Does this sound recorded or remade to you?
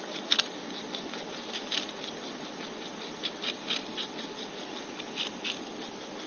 remade